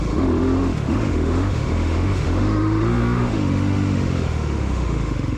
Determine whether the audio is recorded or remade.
remade